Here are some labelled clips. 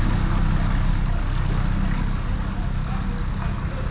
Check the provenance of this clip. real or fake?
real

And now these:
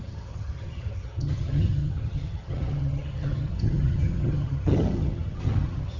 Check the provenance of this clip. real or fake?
fake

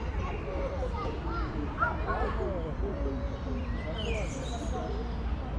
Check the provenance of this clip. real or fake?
real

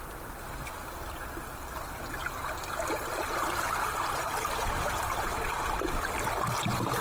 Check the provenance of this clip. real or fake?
real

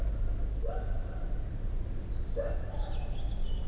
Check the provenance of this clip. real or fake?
real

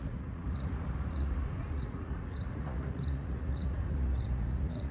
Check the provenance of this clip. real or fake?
fake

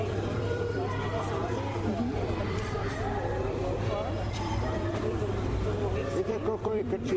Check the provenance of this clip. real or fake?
fake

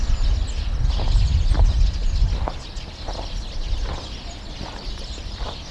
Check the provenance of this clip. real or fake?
real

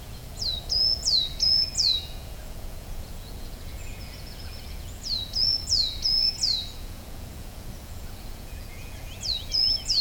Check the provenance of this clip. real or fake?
fake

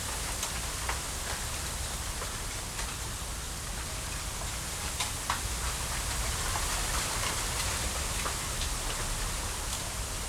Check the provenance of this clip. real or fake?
real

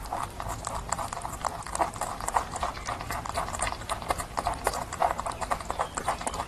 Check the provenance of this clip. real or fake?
real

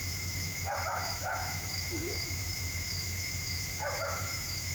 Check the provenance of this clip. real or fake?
fake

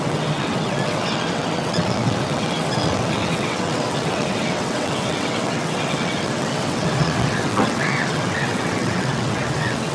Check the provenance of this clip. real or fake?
fake